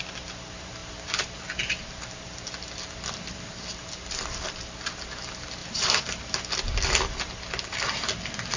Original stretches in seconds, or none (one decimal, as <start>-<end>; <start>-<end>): 0.0-0.8; 1.4-5.6; 6.4-8.6